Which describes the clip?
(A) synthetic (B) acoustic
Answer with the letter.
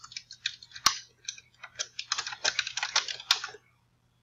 B